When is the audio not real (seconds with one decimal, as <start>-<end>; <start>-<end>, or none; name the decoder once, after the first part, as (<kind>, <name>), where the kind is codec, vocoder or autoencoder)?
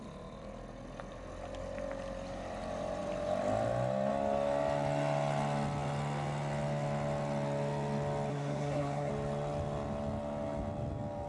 8.3-9.1 (codec, SNAC)